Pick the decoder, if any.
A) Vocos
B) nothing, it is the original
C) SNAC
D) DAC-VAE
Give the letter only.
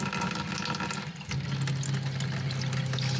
B